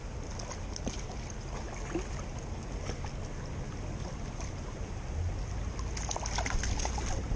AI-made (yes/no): no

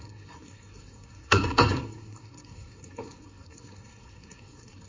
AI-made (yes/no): yes